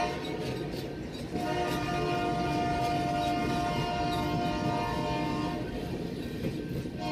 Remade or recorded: recorded